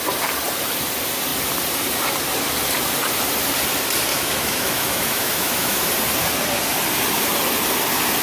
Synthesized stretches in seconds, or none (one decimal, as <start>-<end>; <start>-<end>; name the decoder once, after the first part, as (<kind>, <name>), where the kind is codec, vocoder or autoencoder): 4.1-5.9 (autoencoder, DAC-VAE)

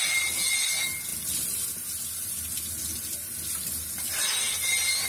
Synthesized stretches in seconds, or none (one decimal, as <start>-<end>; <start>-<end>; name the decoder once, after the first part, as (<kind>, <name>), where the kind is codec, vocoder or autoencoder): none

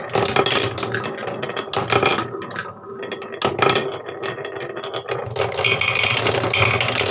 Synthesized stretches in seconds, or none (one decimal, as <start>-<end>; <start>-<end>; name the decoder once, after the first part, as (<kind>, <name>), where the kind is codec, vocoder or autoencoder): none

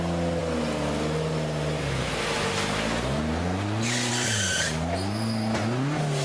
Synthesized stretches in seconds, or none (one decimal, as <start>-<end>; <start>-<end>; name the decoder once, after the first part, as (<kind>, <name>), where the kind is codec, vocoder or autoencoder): none

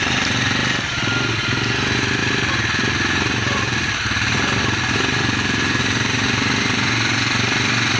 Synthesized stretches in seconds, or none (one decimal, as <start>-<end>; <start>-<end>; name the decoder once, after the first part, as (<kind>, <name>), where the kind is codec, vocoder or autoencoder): 2.2-5.8 (vocoder, BigVGAN v2)

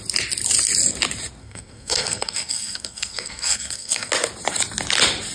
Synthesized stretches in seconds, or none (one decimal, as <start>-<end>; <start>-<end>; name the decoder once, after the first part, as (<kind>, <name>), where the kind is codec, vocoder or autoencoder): 1.4-4.1 (codec, SNAC)

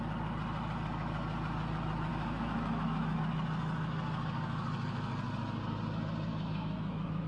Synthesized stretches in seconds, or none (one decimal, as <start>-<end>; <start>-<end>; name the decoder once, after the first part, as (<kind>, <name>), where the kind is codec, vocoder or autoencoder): 2.1-3.2 (autoencoder, DAC-VAE); 6.3-7.3

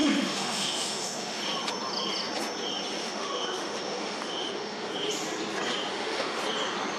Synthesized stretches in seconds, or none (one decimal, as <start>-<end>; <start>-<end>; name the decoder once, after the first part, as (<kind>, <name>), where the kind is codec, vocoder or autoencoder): 0.0-1.4 (autoencoder, DAC-VAE); 3.0-4.9; 5.9-6.4